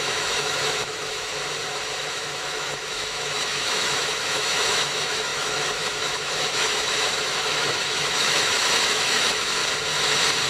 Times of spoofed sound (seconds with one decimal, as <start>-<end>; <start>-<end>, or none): 0.0-1.3; 2.1-9.6